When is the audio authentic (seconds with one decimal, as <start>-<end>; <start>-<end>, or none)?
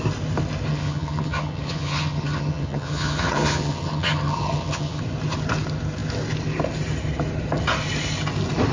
0.0-0.7; 5.0-8.7